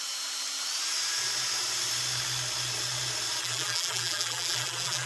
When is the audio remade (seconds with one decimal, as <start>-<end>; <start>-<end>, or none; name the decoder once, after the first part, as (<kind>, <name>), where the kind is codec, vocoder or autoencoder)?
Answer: 3.4-5.1 (vocoder, BigVGAN v2)